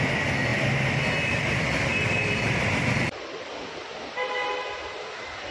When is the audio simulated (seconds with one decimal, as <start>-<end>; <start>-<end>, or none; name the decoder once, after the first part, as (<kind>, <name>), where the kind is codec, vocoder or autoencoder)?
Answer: 1.9-4.0 (vocoder, BigVGAN v2)